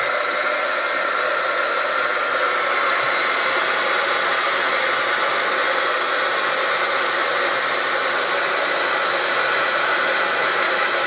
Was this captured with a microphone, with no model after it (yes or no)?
yes